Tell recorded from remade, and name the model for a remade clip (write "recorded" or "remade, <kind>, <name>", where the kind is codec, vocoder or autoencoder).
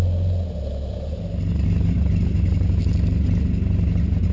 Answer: recorded